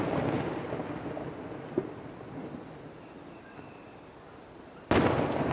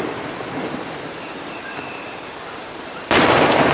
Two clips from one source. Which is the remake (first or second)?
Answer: second